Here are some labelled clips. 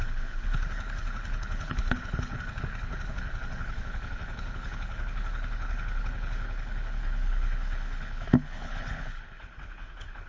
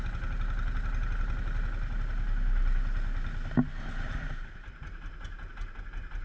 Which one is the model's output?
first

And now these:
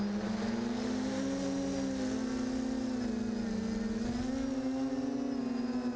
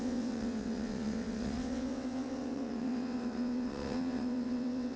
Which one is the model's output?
second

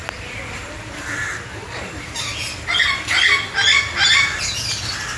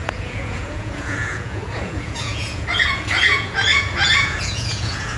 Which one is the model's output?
second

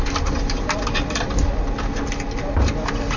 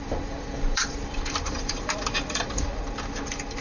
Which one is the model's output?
second